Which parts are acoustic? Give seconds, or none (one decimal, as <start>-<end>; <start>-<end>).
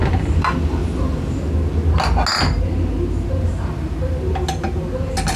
0.0-5.4